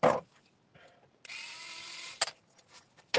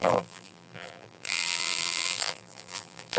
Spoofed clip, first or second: second